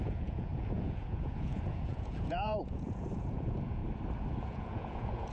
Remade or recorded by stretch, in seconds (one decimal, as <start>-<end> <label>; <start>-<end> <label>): 0.0-3.8 remade; 3.8-4.4 recorded; 4.4-5.3 remade